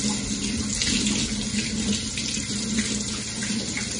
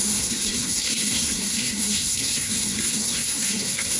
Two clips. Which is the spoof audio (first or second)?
second